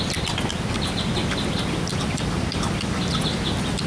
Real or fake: real